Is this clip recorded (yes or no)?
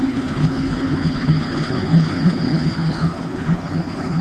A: no